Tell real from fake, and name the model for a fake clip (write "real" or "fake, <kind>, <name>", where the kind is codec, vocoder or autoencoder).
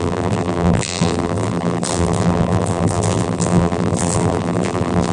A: fake, vocoder, BigVGAN v2